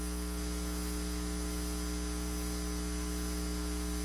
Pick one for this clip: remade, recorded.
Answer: recorded